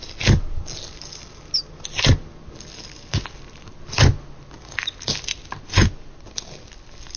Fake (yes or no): no